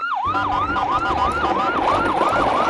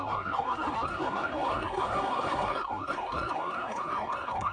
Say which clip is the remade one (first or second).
second